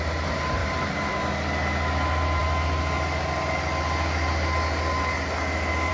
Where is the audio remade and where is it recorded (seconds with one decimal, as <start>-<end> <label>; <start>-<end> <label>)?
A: 0.0-0.6 recorded; 0.6-1.3 remade; 1.3-5.9 recorded